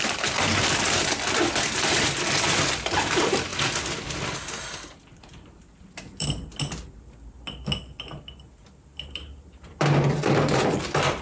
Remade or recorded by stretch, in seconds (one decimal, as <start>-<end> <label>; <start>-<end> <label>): 0.0-3.5 remade; 3.5-6.0 recorded; 6.0-6.5 remade; 6.5-9.7 recorded; 9.7-11.2 remade